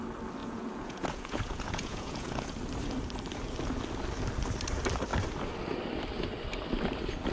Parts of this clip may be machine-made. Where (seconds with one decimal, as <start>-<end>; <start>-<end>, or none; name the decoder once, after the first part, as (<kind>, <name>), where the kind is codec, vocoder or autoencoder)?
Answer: 0.4-2.6 (vocoder, Vocos)